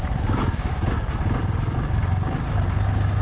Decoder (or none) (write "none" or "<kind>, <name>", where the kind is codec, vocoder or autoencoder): none